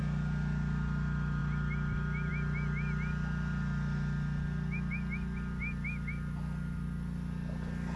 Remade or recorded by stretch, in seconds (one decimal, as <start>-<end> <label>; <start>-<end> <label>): 0.0-8.0 recorded